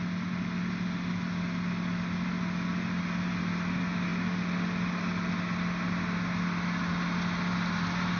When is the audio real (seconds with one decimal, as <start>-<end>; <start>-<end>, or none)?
0.0-8.2